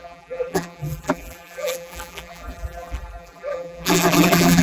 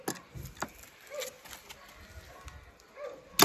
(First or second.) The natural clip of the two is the second